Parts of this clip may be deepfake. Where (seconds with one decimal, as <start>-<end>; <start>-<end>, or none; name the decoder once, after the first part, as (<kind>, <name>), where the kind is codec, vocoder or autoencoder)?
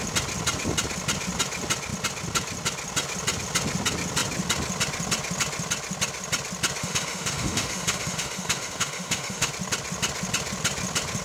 6.8-9.5 (autoencoder, DAC-VAE)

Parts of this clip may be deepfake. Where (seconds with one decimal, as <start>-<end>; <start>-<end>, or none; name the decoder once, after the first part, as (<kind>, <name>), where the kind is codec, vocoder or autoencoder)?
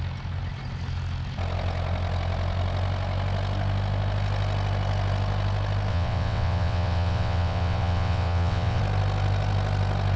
5.9-8.8 (vocoder, WaveNeXt)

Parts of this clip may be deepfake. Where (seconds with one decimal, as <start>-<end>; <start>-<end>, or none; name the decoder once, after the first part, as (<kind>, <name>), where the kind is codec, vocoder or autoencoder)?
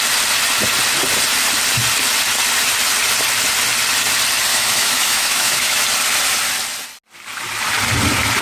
4.5-5.8 (autoencoder, DAC-VAE)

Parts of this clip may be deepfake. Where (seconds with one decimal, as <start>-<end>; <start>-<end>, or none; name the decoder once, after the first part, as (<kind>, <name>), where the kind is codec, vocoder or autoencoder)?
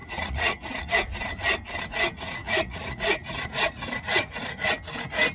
0.0-0.9 (vocoder, Vocos); 2.4-4.7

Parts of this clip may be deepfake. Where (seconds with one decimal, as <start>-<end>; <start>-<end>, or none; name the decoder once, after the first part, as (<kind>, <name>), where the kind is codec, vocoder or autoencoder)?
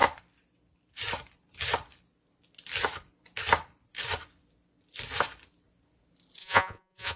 6.4-7.2 (vocoder, Vocos)